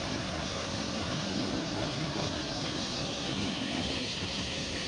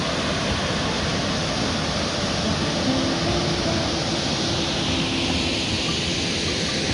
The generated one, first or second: first